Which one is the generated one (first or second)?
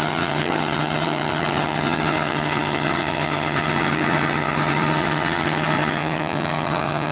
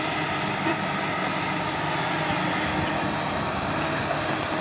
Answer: first